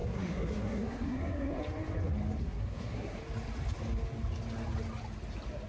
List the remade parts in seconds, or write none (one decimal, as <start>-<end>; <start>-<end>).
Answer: 0.0-1.6; 2.4-3.2